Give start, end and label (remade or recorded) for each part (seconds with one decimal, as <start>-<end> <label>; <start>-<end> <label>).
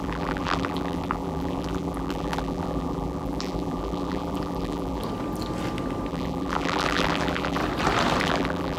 0.0-5.0 remade; 5.0-6.1 recorded; 6.1-7.6 remade; 7.6-8.2 recorded; 8.2-8.8 remade